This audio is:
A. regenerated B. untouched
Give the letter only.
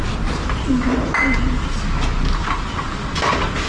B